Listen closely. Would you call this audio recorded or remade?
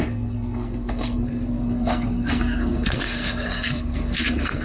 remade